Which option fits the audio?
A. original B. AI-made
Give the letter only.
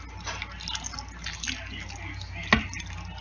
A